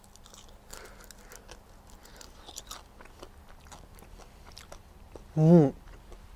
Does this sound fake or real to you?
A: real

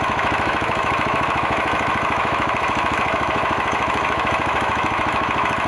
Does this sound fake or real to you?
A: fake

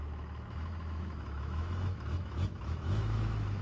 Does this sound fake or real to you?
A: fake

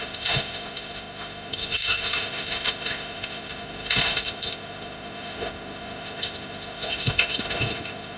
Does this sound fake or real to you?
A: fake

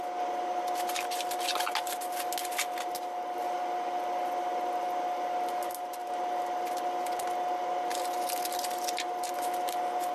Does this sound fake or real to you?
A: real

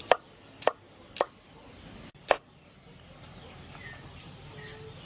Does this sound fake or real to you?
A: real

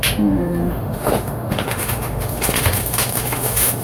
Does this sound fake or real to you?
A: fake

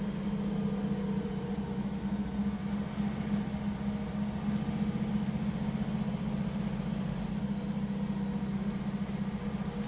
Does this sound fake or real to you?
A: real